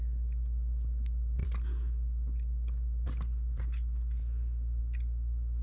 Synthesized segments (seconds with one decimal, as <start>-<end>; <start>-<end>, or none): none